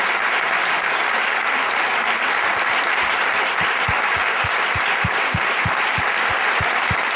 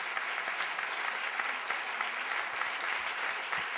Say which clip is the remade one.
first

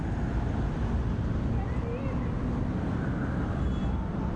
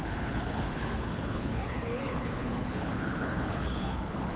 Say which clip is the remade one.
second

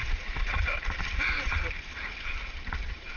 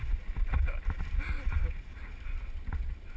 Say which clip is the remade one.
first